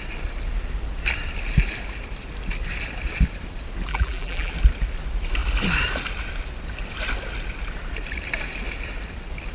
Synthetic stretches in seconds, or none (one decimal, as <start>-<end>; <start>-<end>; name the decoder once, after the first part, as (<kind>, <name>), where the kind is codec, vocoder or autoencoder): 3.9-4.5 (vocoder, BigVGAN v2)